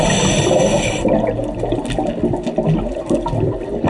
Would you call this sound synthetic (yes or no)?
no